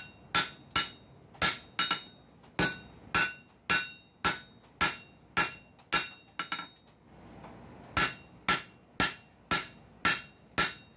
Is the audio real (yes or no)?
yes